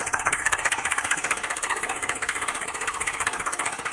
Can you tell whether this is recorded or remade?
remade